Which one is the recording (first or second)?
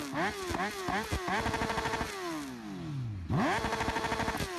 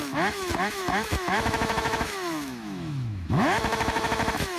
first